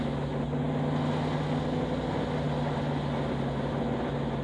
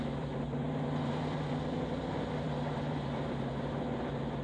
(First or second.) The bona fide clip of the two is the first